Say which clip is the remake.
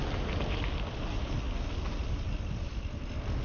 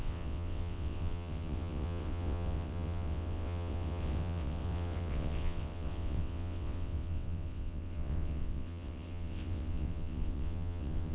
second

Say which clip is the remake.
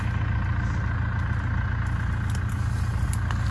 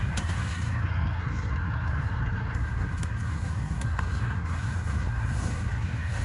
second